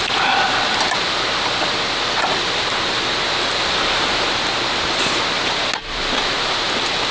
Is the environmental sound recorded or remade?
recorded